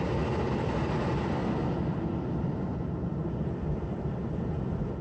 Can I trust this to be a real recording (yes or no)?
yes